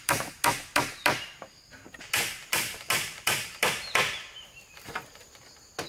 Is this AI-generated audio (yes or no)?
yes